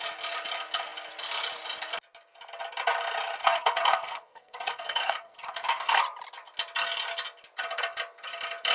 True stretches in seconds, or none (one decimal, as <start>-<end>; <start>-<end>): 0.0-3.4; 6.0-8.7